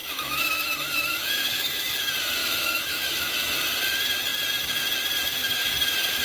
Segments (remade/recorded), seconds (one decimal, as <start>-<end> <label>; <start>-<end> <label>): 0.0-2.0 remade; 2.0-2.4 recorded; 2.4-3.5 remade; 3.5-5.4 recorded; 5.4-6.2 remade